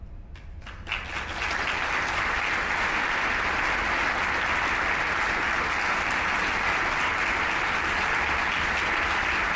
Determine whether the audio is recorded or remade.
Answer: recorded